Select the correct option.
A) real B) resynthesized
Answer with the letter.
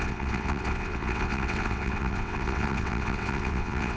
B